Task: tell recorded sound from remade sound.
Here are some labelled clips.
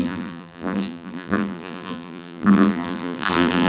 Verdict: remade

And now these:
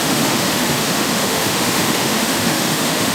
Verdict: remade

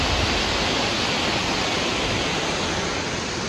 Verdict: recorded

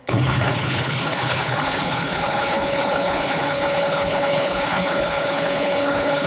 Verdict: remade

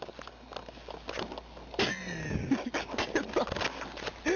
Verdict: recorded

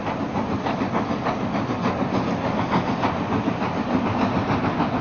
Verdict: recorded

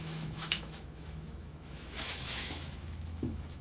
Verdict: remade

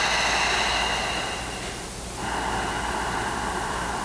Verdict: recorded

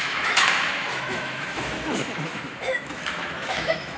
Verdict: remade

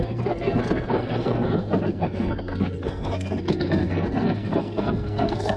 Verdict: remade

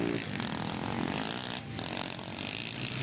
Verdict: recorded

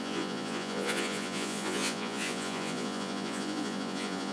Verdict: remade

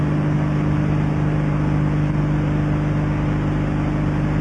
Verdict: recorded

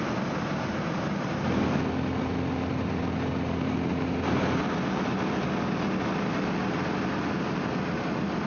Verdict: recorded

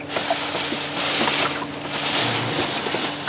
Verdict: recorded